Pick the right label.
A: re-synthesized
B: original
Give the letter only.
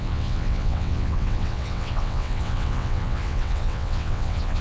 A